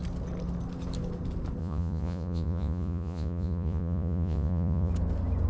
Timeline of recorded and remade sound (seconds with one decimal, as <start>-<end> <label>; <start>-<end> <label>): 0.0-1.6 recorded; 1.6-4.9 remade; 4.9-5.5 recorded